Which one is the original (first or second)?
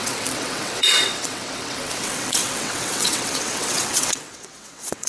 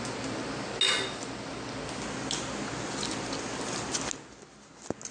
second